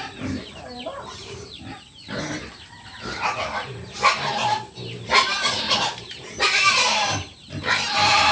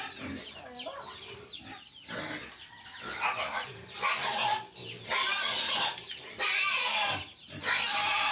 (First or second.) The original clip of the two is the second